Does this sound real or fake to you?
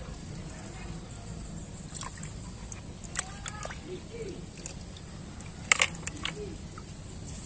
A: real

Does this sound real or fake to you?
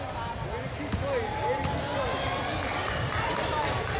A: real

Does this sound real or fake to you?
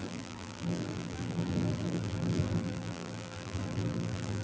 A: fake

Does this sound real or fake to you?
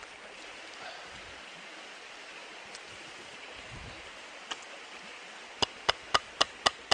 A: real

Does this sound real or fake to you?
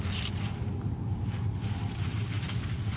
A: real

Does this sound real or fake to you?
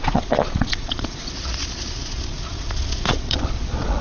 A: fake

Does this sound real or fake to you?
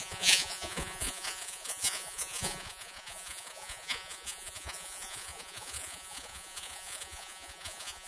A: fake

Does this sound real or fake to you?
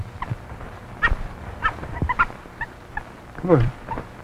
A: fake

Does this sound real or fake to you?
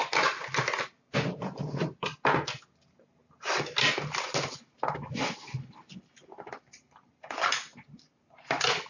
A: real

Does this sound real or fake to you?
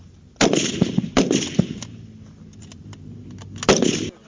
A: real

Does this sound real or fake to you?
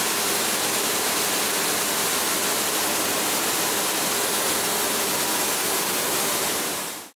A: real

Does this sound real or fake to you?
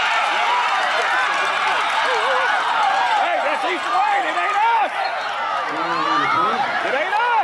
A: real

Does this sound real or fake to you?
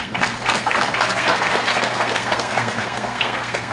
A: fake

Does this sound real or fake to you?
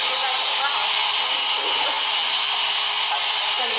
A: real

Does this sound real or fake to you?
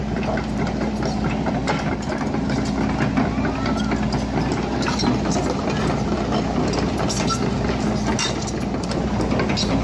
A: real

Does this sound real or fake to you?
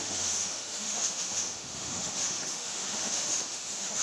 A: fake